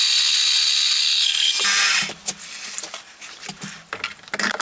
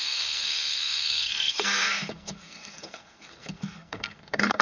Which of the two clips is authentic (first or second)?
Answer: first